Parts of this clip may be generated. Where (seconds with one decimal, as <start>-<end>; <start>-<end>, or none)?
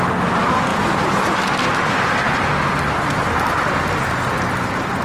none